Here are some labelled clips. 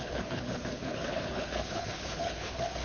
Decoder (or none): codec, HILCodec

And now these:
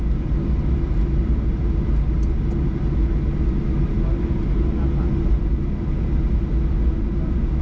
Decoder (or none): none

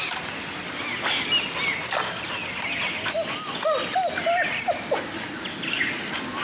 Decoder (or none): none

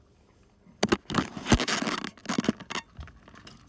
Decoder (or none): none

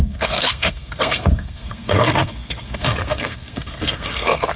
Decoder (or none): codec, SNAC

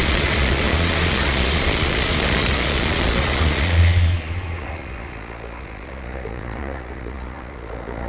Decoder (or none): vocoder, Vocos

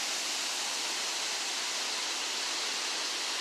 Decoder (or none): none